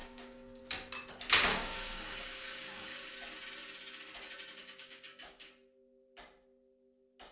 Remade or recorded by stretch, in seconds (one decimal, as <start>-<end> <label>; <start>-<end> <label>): 0.0-0.6 remade; 0.6-1.5 recorded; 1.5-3.1 remade; 3.1-4.6 recorded; 4.6-5.5 remade; 5.5-7.3 recorded